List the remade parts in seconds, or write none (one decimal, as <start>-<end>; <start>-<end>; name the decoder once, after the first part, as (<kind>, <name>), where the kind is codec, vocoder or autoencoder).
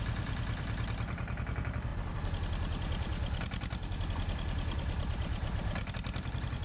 0.0-6.6 (vocoder, BigVGAN v2)